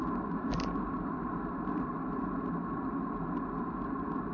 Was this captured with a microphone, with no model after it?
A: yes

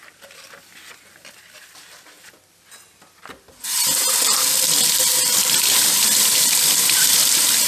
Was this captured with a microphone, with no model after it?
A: no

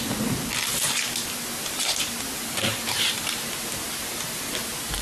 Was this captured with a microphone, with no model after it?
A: yes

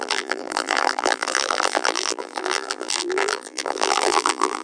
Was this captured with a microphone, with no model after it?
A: no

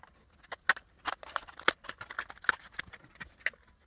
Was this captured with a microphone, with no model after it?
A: yes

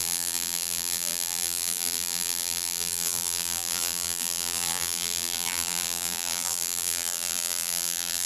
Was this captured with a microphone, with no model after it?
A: no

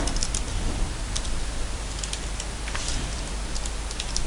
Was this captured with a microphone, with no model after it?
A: yes